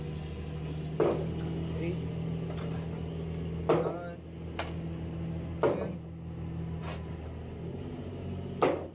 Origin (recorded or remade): recorded